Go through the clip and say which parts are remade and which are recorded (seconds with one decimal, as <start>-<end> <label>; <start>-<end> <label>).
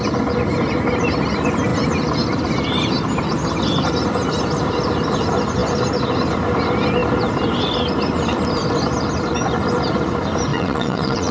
0.0-10.5 recorded; 10.5-11.3 remade